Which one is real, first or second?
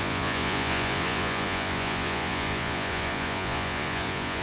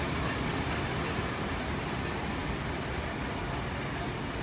second